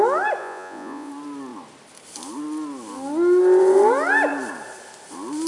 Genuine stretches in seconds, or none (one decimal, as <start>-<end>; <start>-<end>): 0.0-0.4; 1.1-5.5